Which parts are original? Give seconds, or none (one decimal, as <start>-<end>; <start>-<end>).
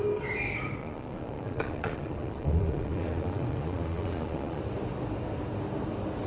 0.0-0.8; 4.6-6.3